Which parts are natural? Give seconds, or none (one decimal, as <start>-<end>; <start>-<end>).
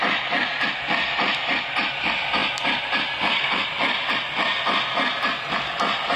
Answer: 0.0-6.2